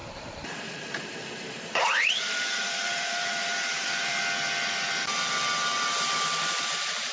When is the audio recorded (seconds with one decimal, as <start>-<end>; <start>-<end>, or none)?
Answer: 4.2-7.1